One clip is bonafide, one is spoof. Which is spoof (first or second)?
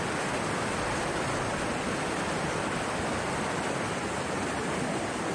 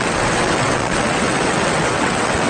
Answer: second